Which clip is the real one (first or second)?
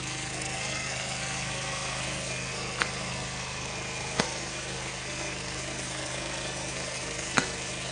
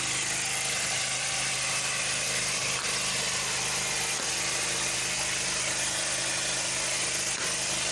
second